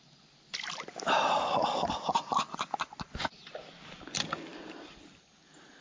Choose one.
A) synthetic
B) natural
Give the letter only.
B